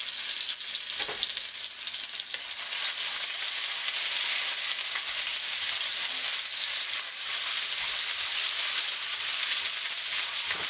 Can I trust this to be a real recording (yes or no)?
yes